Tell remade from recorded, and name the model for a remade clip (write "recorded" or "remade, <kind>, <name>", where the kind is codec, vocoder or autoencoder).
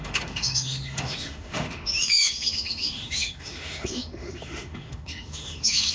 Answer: remade, autoencoder, DAC-VAE